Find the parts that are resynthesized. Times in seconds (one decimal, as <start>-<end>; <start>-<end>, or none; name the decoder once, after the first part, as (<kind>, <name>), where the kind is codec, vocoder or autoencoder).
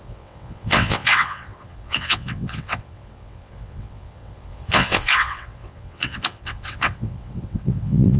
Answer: 0.0-8.2 (vocoder, WaveNeXt)